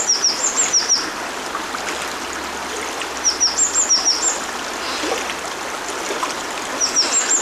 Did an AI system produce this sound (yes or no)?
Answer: no